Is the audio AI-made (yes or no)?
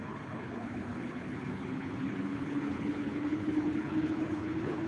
yes